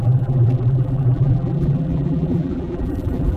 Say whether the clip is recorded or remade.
remade